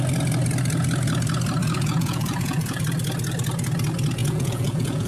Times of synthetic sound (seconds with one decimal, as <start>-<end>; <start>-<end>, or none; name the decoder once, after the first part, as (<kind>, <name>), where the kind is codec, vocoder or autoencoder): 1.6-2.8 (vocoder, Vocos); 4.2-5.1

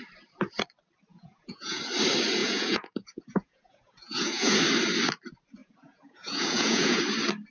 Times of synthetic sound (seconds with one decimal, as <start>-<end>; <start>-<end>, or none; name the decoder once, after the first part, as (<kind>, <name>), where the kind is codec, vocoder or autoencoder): 1.1-1.8 (vocoder, Vocos); 2.4-4.6; 5.6-7.0

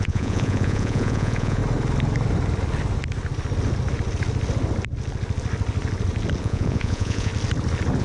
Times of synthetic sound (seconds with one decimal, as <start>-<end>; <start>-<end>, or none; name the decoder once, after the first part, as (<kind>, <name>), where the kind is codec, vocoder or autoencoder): 0.0-1.6 (vocoder, Vocos); 6.4-7.3

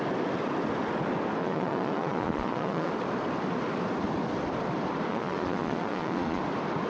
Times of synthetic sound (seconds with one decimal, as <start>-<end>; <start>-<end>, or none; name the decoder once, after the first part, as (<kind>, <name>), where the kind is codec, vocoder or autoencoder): 1.4-2.9 (vocoder, Vocos); 5.1-6.4

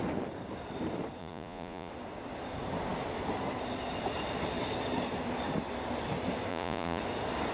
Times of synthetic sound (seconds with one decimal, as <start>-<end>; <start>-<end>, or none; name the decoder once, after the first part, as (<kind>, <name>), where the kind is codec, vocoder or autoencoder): 1.2-1.9 (vocoder, Vocos); 6.5-7.0

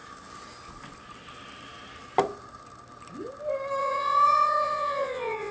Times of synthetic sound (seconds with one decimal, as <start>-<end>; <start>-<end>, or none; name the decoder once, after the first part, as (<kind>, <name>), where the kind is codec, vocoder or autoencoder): 3.8-5.5 (vocoder, Vocos)